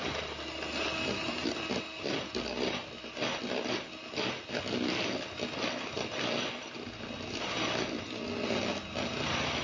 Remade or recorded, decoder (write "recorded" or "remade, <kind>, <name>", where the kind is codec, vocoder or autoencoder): recorded